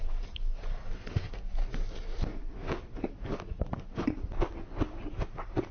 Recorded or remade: recorded